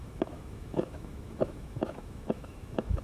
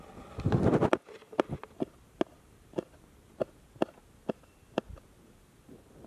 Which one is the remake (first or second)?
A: first